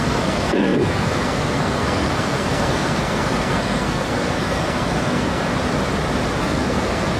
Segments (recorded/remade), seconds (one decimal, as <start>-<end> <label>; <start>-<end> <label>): 0.0-5.5 remade; 5.5-6.4 recorded; 6.4-7.2 remade